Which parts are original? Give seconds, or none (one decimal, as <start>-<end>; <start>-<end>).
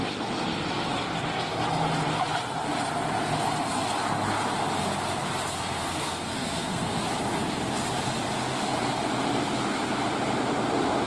0.0-5.8; 7.0-11.1